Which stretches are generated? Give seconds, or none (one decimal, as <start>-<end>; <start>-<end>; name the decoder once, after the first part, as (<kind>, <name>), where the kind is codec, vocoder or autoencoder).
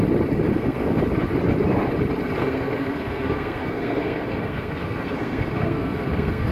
0.5-1.0 (codec, SNAC); 2.4-6.5